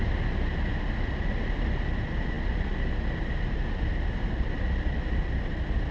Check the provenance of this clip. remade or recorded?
recorded